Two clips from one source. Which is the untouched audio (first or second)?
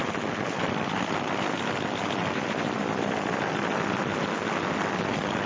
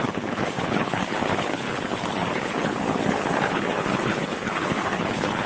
first